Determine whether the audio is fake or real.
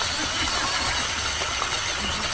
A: real